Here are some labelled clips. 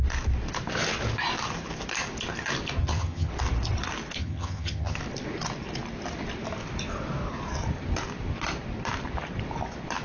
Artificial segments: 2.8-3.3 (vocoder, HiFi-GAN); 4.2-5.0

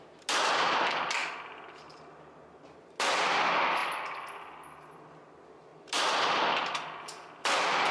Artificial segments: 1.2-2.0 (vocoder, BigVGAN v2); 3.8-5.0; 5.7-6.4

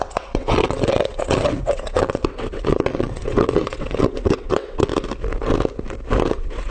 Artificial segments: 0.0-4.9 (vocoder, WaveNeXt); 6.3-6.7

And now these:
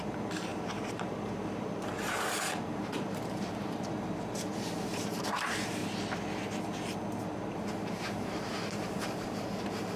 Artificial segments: 0.0-5.8 (vocoder, BigVGAN v2); 7.2-10.0

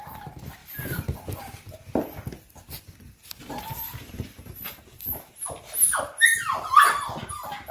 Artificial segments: none

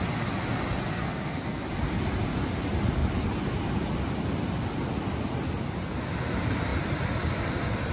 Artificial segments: 0.9-1.6 (codec, SNAC)

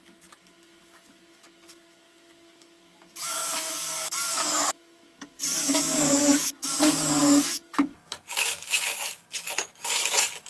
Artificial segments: 0.0-10.5 (codec, DAC)